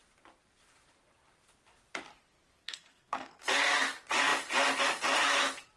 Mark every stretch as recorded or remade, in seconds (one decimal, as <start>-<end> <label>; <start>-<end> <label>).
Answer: 0.0-2.6 recorded; 2.6-3.4 remade; 3.4-5.8 recorded